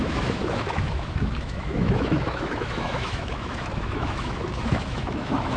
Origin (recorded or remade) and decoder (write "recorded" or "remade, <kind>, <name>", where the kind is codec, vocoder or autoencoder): remade, autoencoder, DAC-VAE